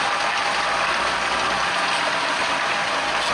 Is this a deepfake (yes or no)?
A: no